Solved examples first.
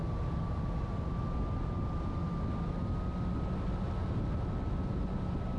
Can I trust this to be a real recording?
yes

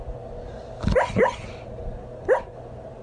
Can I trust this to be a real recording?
yes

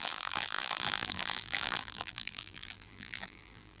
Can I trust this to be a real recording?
no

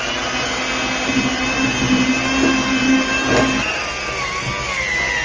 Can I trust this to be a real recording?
yes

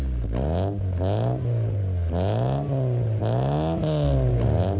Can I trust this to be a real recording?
yes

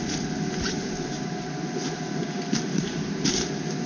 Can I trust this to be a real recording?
yes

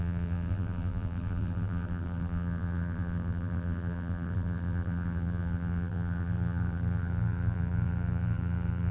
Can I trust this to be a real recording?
no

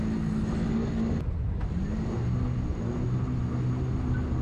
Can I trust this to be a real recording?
yes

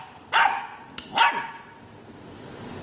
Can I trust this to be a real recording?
yes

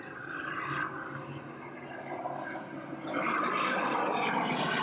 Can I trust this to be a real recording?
yes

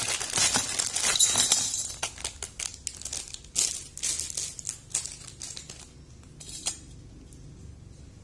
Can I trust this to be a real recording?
yes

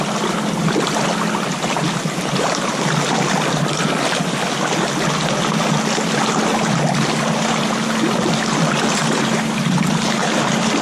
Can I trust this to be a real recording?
yes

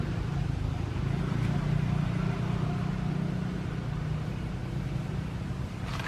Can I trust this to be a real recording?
yes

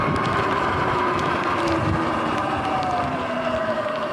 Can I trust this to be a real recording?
no